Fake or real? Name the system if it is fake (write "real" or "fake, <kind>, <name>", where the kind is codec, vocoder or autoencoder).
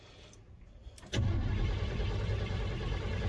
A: real